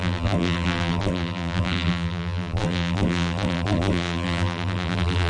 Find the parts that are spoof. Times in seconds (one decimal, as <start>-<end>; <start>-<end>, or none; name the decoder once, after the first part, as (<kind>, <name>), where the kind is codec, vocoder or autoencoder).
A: 0.0-5.3 (vocoder, BigVGAN v2)

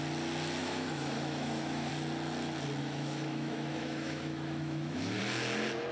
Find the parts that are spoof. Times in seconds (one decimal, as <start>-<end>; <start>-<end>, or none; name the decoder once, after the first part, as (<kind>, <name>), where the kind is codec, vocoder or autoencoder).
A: 0.6-1.9 (autoencoder, DAC-VAE); 2.8-5.2

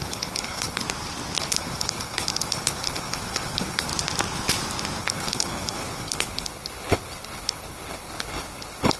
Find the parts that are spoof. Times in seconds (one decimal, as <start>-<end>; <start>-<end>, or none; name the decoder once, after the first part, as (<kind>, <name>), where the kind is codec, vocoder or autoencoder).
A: 0.0-0.8 (codec, HILCodec); 1.4-3.9; 5.0-9.0

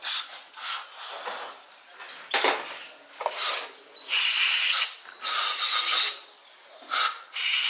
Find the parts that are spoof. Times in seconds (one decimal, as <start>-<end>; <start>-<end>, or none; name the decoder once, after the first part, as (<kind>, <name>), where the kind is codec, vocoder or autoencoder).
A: none

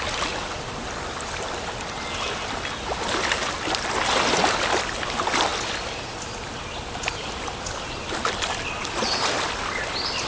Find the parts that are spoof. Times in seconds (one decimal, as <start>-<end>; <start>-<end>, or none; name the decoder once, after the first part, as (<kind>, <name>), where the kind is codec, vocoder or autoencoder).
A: none